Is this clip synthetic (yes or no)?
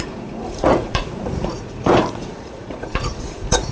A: yes